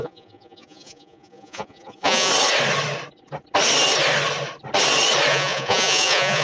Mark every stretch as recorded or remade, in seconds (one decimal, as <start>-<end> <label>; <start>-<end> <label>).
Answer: 0.0-2.3 remade; 2.3-5.3 recorded; 5.3-6.4 remade